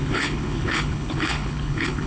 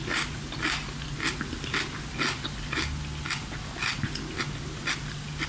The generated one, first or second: first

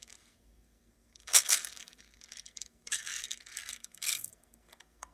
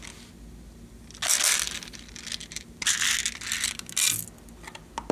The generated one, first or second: first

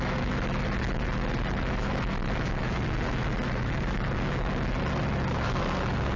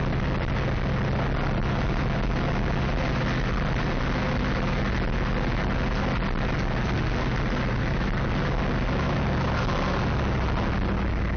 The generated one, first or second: first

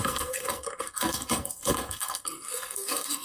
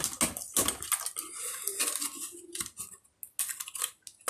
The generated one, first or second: first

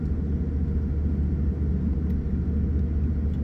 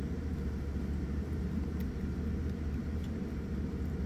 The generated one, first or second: second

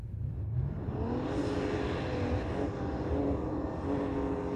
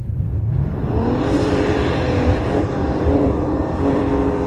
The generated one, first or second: second